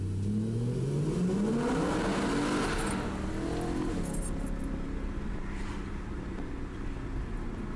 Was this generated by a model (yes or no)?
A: no